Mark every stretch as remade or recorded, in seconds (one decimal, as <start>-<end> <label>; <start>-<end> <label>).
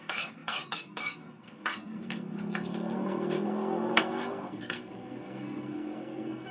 0.0-6.5 remade